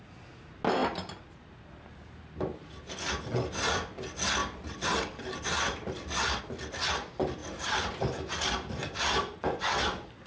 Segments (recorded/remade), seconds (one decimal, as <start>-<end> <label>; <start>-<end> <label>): 0.0-4.4 recorded; 4.4-6.4 remade; 6.4-7.4 recorded; 7.4-9.0 remade; 9.0-10.3 recorded